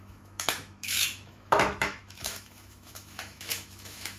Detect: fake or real fake